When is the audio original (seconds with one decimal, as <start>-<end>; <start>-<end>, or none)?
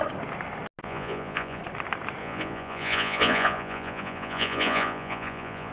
0.0-0.8; 1.6-2.2